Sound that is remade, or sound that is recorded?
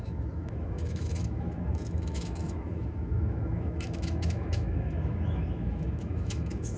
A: remade